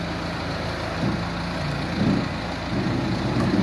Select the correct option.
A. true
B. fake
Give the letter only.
A